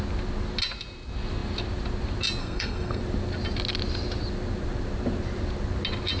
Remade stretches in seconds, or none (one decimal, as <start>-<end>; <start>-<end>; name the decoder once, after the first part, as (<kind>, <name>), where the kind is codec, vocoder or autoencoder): 2.4-3.0 (codec, SNAC)